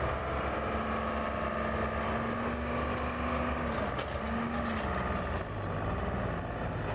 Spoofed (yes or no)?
no